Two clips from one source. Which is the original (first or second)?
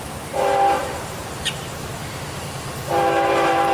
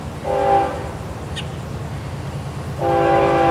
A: second